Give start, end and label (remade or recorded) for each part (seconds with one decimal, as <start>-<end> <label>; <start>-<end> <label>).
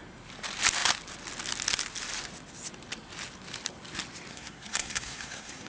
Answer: 0.0-4.3 recorded; 4.3-5.7 remade